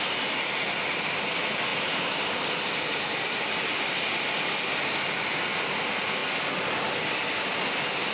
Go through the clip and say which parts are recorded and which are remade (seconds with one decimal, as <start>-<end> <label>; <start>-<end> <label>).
0.0-8.1 recorded